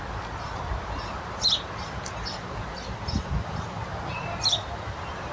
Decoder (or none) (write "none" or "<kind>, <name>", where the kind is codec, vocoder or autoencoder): none